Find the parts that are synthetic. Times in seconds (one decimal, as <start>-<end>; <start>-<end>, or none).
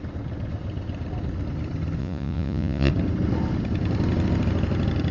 2.0-2.9